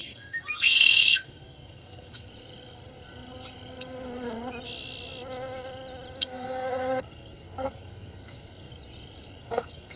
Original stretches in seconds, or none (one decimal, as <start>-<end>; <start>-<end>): 2.3-6.2; 8.7-9.4